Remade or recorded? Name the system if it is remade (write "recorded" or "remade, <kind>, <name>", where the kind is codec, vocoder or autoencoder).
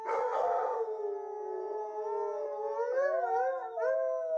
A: recorded